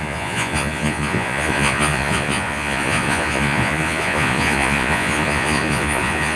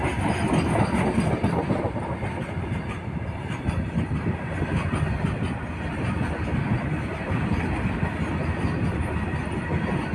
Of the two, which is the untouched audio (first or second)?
second